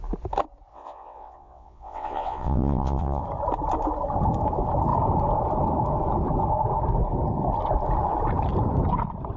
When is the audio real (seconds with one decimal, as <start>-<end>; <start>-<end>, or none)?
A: 0.0-0.7; 3.2-9.4